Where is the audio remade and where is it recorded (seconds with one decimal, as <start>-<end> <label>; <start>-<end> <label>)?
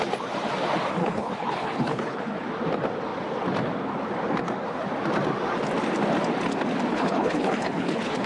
0.0-1.0 recorded; 1.0-2.2 remade; 2.2-6.9 recorded; 6.9-8.3 remade